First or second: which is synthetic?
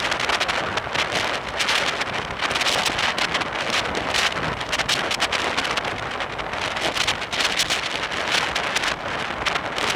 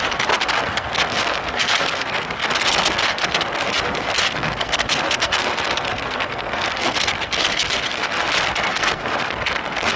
second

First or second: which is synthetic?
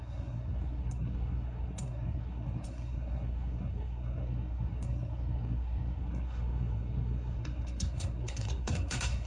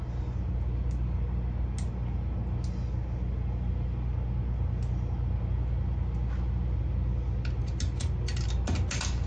first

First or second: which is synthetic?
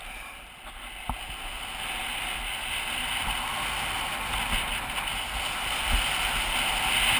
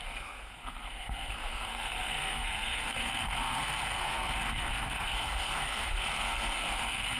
second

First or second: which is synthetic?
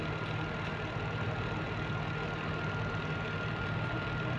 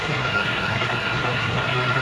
second